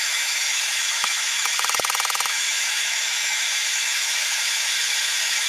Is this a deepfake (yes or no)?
yes